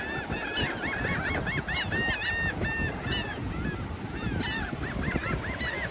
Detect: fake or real real